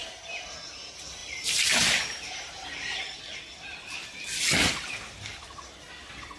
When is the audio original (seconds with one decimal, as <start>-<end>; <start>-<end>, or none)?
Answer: 0.0-1.2; 3.2-6.4

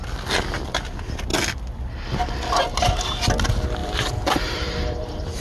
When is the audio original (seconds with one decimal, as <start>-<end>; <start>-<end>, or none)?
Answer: 0.0-3.8